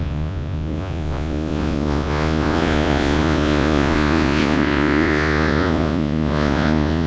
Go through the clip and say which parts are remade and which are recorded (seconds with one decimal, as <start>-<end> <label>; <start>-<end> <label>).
0.0-7.1 remade